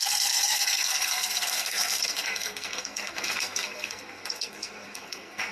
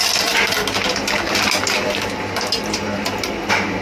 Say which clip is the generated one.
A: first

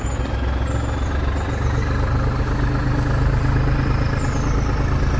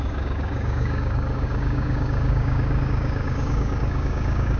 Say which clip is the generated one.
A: second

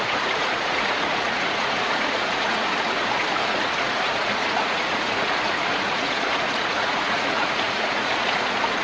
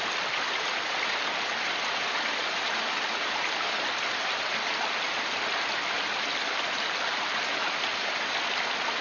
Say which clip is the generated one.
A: first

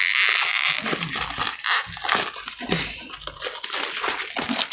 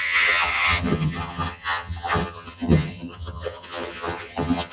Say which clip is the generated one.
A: second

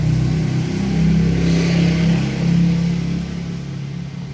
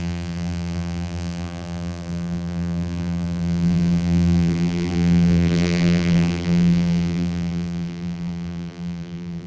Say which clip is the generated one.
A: second